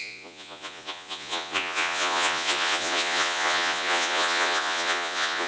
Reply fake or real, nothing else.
fake